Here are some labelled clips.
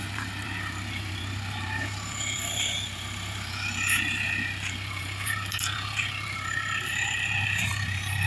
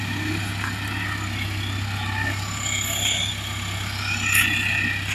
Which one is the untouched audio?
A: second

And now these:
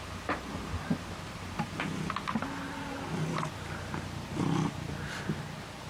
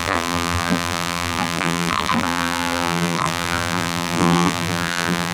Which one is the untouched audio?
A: first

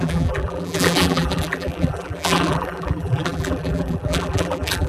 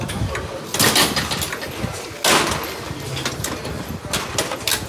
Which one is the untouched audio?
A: second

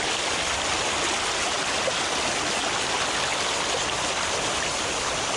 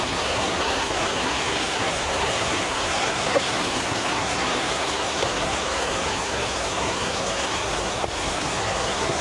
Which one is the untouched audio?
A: first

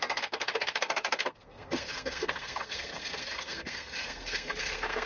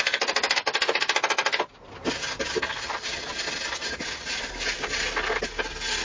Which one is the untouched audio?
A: second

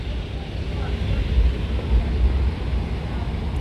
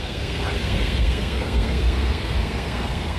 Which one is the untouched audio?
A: first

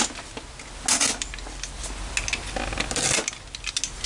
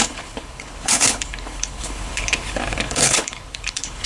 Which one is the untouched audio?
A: first